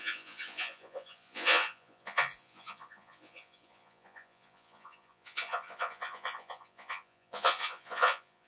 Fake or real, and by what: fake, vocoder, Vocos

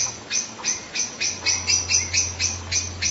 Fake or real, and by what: real